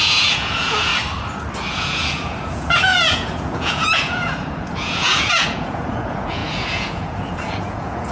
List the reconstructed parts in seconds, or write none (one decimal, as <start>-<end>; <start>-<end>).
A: 0.0-0.9; 1.7-8.1